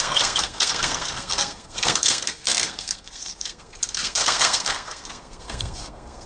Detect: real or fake fake